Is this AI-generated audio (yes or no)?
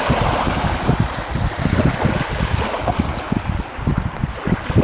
no